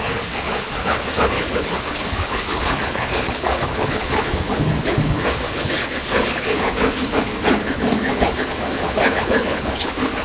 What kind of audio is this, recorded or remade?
remade